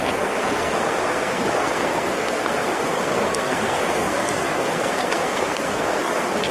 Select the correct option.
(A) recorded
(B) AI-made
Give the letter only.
B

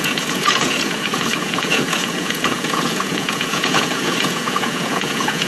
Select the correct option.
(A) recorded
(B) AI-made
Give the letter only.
B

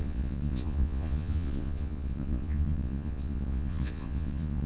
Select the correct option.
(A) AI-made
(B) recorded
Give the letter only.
A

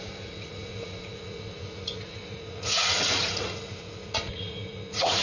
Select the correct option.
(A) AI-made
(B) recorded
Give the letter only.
A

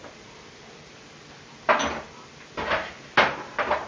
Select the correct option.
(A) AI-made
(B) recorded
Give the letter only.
B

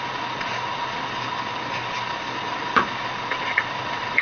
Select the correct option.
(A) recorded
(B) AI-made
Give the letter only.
B